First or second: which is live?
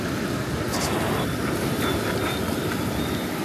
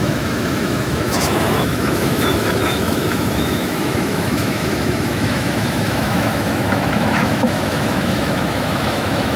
first